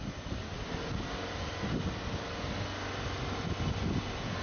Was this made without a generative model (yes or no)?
yes